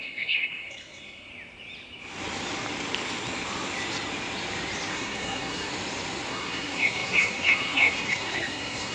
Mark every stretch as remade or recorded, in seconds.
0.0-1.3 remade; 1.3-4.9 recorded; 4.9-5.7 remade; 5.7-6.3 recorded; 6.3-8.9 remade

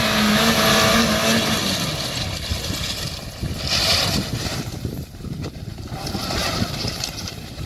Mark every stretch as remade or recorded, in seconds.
0.0-3.9 recorded; 3.9-5.6 remade; 5.6-6.4 recorded; 6.4-7.7 remade

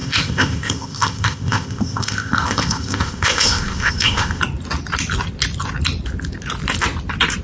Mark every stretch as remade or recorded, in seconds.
0.0-4.4 remade; 4.4-7.4 recorded

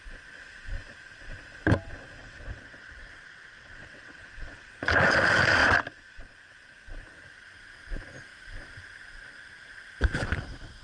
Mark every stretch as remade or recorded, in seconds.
0.0-2.2 recorded; 2.2-4.7 remade; 4.7-10.8 recorded

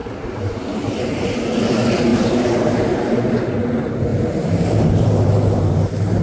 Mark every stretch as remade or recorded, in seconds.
0.0-1.3 remade; 1.3-2.1 recorded; 2.1-2.8 remade; 2.8-4.1 recorded; 4.1-5.7 remade; 5.7-6.2 recorded

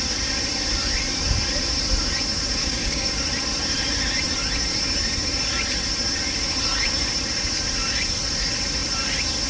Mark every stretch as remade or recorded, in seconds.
0.0-2.6 recorded; 2.6-3.1 remade; 3.1-9.5 recorded

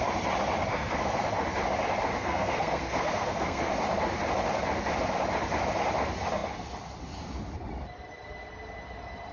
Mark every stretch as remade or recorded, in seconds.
0.0-0.7 recorded; 0.7-1.2 remade; 1.2-2.1 recorded; 2.1-3.7 remade; 3.7-9.3 recorded